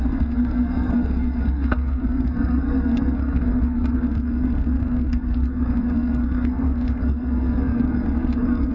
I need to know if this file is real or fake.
fake